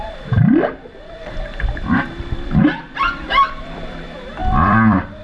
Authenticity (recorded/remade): remade